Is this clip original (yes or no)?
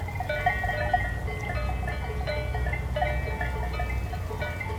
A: yes